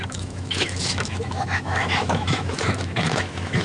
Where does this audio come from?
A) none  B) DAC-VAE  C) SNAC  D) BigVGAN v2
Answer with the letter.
B